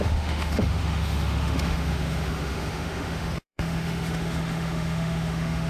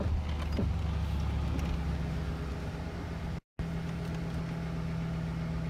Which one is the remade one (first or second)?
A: first